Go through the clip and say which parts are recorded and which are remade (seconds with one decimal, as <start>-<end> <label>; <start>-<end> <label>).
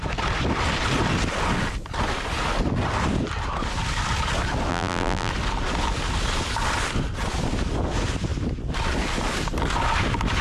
0.0-4.7 recorded; 4.7-5.3 remade; 5.3-10.4 recorded